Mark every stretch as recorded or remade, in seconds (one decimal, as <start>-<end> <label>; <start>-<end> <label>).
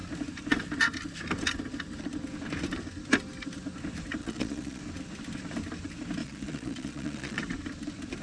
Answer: 0.0-4.2 recorded; 4.2-4.8 remade; 4.8-6.2 recorded; 6.2-7.4 remade; 7.4-8.2 recorded